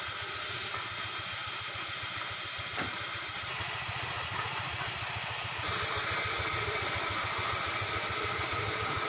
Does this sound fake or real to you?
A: real